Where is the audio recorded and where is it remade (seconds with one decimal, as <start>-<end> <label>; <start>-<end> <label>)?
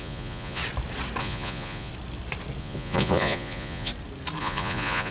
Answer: 0.0-0.6 remade; 0.6-1.2 recorded; 1.2-1.9 remade; 1.9-2.6 recorded; 2.6-3.9 remade; 3.9-4.4 recorded; 4.4-5.1 remade